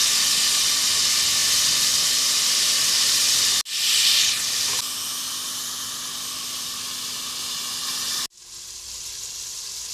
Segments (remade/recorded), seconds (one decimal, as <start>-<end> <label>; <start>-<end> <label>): 0.0-9.9 recorded